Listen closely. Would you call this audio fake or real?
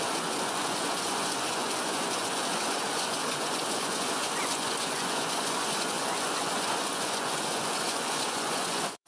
fake